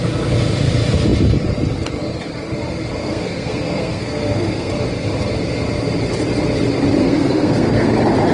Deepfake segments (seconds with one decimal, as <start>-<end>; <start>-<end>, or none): 3.0-4.7; 7.0-7.9

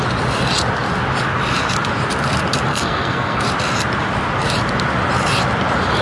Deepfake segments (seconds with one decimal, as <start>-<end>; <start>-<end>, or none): 2.7-3.4